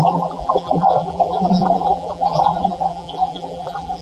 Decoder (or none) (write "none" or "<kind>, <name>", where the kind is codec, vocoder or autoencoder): vocoder, BigVGAN v2